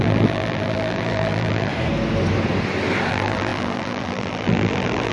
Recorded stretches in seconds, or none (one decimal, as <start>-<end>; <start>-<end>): 1.7-3.1